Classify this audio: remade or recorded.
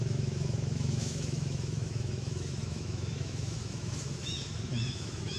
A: remade